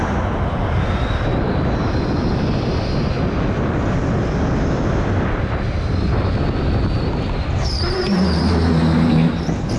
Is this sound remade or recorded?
recorded